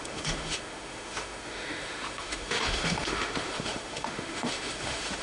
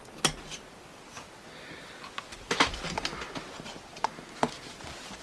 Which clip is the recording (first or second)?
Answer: second